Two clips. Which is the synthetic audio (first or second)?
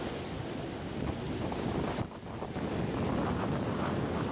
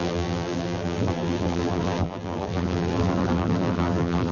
second